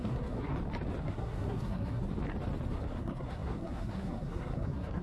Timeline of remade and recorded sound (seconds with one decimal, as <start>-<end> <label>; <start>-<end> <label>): 0.0-0.5 remade; 0.5-1.0 recorded; 1.0-2.0 remade; 2.0-2.7 recorded; 2.7-5.0 remade